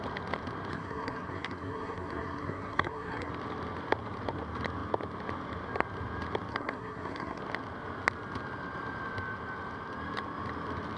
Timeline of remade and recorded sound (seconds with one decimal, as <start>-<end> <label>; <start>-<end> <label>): 0.0-0.7 recorded; 0.7-3.3 remade; 3.3-6.5 recorded; 6.5-7.4 remade; 7.4-11.0 recorded

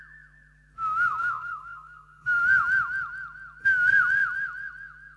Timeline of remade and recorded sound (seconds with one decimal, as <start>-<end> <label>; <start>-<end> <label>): 0.0-1.2 recorded; 1.2-2.4 remade; 2.4-5.2 recorded

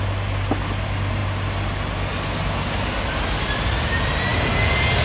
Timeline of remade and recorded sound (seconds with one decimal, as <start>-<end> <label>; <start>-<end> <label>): 0.0-5.0 recorded

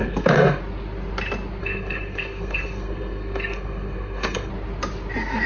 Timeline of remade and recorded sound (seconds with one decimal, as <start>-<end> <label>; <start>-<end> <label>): 0.0-0.6 remade; 0.6-1.6 recorded; 1.6-4.5 remade; 4.5-5.5 recorded

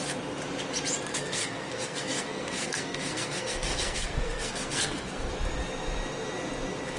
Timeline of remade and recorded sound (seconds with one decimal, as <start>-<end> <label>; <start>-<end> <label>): 0.0-1.1 recorded; 1.1-5.3 remade; 5.3-7.0 recorded

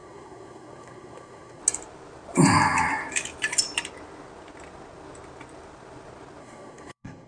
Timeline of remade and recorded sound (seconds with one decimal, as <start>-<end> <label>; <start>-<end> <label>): 0.0-1.6 remade; 1.6-6.4 recorded; 6.4-7.3 remade

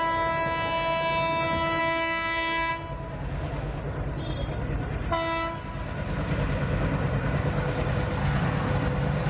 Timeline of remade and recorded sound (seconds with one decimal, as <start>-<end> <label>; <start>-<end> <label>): 0.0-1.8 recorded; 1.8-2.7 remade; 2.7-8.2 recorded; 8.2-8.7 remade; 8.7-9.3 recorded